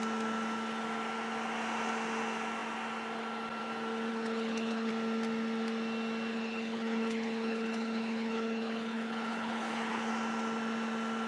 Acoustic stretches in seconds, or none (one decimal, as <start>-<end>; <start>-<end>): 0.0-4.1; 4.9-6.3; 10.1-11.3